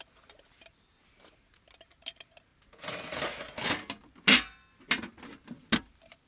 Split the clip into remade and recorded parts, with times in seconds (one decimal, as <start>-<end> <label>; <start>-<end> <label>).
0.0-6.3 recorded